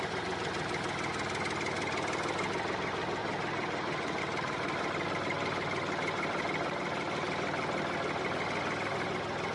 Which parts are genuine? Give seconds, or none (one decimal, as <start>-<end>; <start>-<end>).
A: 0.0-3.2; 4.2-9.5